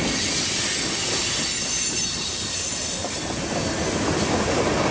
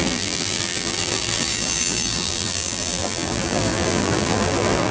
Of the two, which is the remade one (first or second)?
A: second